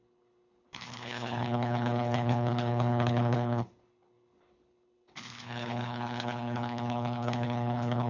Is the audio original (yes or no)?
no